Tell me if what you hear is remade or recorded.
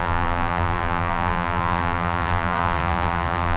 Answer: remade